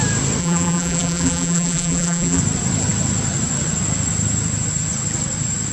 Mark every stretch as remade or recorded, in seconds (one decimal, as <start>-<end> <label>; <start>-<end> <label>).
0.0-0.4 recorded; 0.4-2.4 remade; 2.4-5.7 recorded